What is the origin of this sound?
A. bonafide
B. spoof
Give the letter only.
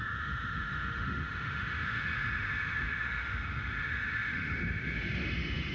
B